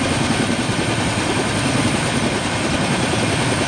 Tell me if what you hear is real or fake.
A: real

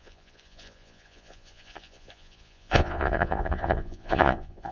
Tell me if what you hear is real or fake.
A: fake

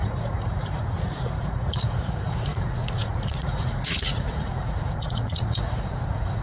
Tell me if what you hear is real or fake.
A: fake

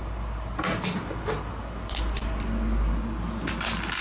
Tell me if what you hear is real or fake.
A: real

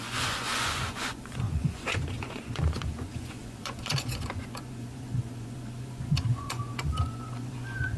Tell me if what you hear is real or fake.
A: fake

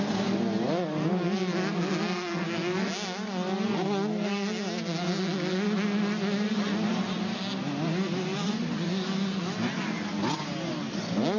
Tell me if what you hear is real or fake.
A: real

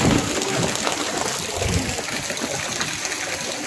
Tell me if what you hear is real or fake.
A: real